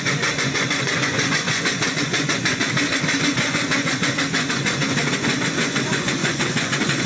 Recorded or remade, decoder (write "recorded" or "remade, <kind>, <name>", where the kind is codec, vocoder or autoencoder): remade, vocoder, Vocos